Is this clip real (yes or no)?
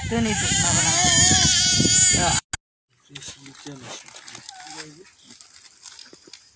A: yes